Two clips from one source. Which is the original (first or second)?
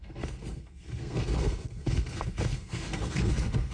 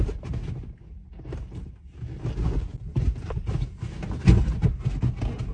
second